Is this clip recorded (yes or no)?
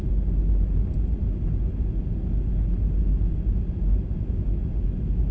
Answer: yes